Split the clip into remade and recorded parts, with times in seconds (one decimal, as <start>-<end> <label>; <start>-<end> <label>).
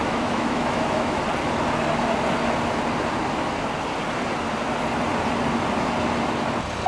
0.0-1.2 remade; 1.2-6.9 recorded